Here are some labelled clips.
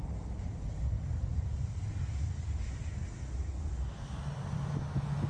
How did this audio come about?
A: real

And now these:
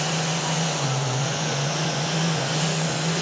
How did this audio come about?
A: fake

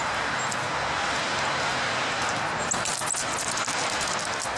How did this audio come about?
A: real